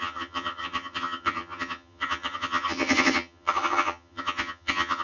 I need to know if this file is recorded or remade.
remade